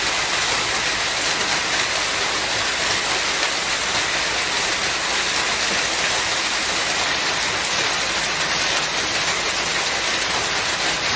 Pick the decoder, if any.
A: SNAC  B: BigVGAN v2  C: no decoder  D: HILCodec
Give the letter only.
C